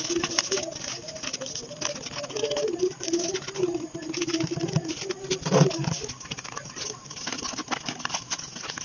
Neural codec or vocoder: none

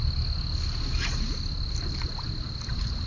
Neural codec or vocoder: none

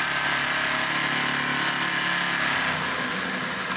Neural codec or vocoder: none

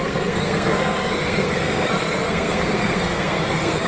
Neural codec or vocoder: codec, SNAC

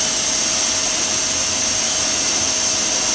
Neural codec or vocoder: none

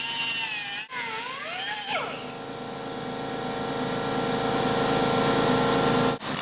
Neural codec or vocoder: none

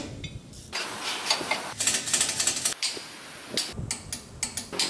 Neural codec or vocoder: none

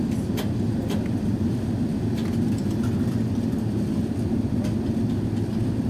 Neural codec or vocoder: none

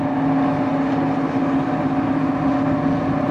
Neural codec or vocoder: none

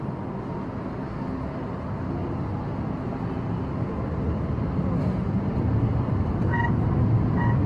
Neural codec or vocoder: none